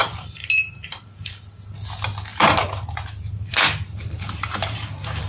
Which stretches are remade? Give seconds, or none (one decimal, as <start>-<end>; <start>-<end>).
0.0-1.4; 2.3-5.3